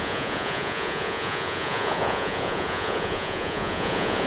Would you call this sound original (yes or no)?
no